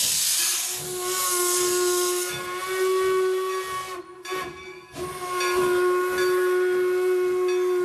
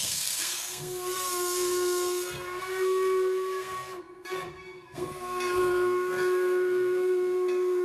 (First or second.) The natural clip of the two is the first